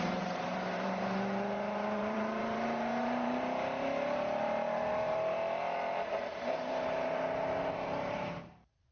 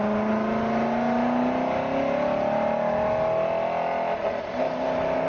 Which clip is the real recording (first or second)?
second